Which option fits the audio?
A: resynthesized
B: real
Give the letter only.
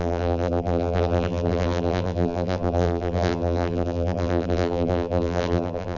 A